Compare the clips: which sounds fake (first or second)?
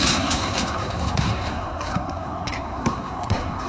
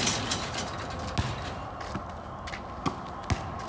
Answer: first